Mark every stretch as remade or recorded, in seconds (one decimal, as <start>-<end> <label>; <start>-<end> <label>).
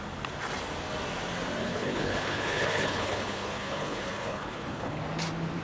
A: 0.0-1.6 recorded; 1.6-5.0 remade; 5.0-5.6 recorded